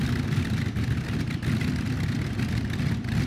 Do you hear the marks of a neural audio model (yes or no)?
yes